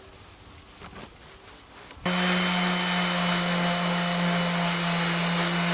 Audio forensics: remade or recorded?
recorded